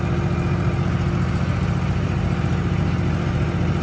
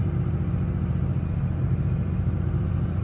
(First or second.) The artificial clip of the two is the second